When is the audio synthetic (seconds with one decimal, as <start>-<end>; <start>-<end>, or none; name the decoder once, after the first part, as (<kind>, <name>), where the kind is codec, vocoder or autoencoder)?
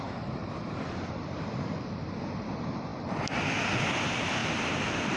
0.0-2.9 (vocoder, BigVGAN v2); 3.8-5.2